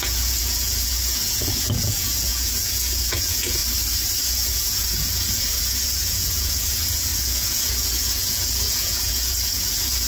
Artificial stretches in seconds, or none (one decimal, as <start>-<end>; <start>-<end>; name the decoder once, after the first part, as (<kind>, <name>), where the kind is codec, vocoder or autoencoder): 0.0-3.6 (vocoder, Vocos); 4.2-10.1